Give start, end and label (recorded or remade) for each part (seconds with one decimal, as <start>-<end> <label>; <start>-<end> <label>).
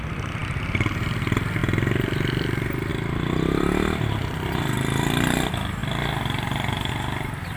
0.0-7.6 recorded